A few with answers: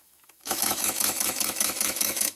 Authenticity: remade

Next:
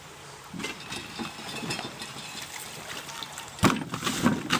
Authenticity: recorded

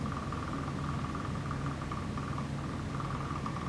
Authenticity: recorded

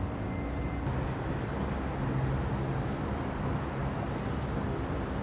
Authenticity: recorded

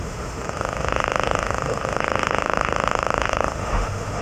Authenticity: remade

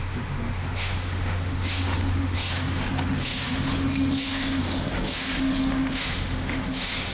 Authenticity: remade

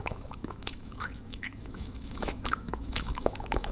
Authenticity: remade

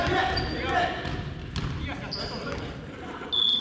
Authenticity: recorded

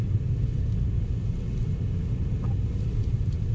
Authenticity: recorded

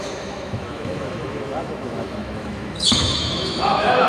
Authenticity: remade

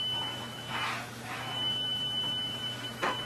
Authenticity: remade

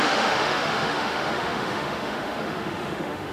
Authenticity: remade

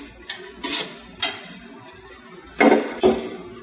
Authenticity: recorded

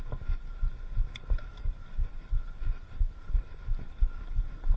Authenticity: recorded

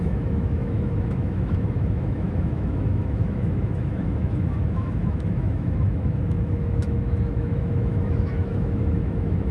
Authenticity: remade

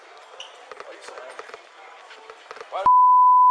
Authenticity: recorded